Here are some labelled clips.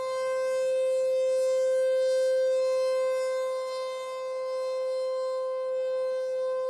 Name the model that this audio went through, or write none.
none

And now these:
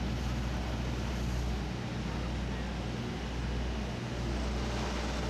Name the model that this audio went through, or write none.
none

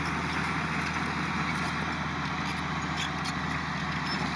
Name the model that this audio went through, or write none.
none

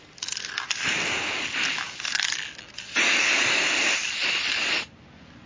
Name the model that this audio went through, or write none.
none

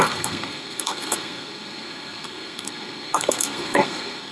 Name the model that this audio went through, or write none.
codec, SNAC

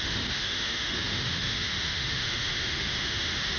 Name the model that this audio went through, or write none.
autoencoder, DAC-VAE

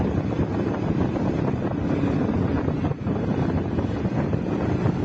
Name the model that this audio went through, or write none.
none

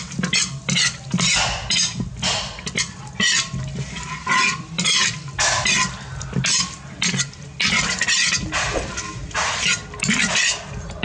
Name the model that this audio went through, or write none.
none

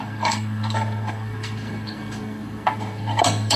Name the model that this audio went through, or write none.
codec, SNAC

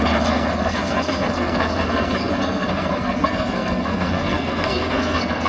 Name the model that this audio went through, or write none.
codec, SNAC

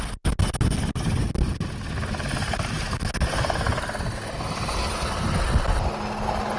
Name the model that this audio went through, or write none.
none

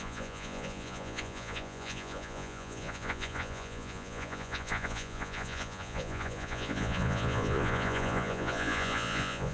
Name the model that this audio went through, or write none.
vocoder, Vocos